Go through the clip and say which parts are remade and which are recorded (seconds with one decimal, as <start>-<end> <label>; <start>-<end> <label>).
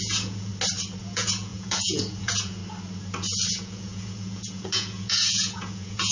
0.0-0.5 remade; 0.5-1.0 recorded; 1.0-2.6 remade; 2.6-3.5 recorded; 3.5-6.1 remade